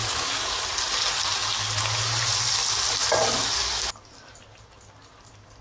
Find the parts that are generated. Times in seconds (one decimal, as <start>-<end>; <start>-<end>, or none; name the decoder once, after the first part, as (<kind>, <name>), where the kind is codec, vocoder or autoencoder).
0.0-0.6 (codec, DAC)

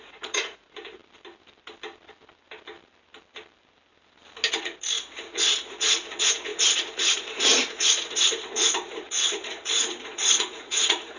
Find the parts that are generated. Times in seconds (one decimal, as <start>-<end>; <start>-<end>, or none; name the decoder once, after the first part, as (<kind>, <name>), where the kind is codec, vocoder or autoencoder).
0.0-1.0 (vocoder, Vocos); 4.5-11.2

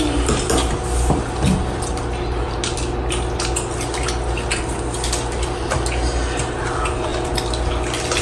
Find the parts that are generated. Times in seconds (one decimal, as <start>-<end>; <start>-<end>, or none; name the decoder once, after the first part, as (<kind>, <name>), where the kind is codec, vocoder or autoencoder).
none